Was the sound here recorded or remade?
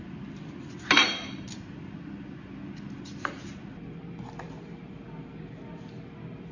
recorded